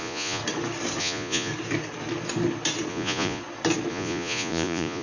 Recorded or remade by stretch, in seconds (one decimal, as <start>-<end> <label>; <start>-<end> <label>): 0.0-0.4 remade; 0.4-1.0 recorded; 1.0-1.5 remade; 1.5-2.9 recorded; 2.9-3.4 remade; 3.4-3.9 recorded; 3.9-5.0 remade